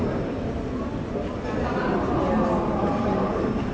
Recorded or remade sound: recorded